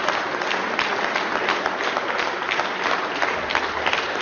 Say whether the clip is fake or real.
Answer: real